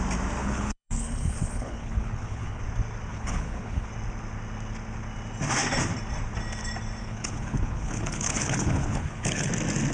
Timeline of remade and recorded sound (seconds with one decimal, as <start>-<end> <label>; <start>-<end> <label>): 0.0-0.4 recorded; 0.4-2.6 remade; 2.6-3.1 recorded; 3.1-3.9 remade; 3.9-7.0 recorded; 7.0-9.5 remade; 9.5-9.9 recorded